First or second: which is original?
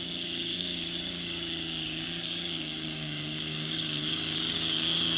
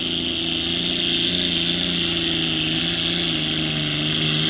second